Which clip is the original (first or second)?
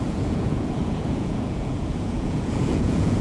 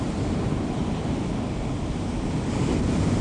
second